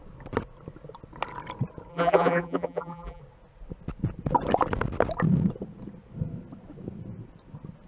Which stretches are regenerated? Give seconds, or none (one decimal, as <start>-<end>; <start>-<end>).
1.9-3.2